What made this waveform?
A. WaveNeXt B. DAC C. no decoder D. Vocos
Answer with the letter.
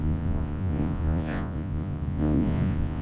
D